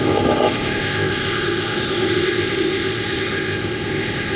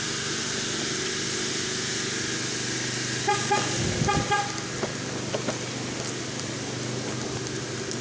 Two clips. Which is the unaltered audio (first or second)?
second